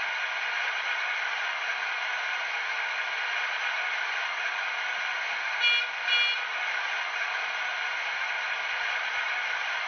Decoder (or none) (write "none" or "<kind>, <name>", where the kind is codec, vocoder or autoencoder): none